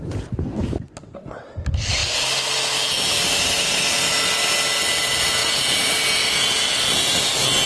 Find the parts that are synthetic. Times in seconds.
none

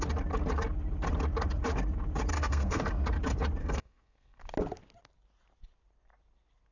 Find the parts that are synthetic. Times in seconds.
2.3-2.9 (codec, SNAC); 3.6-4.4